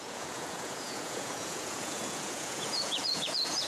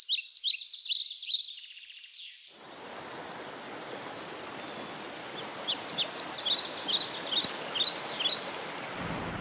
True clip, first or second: second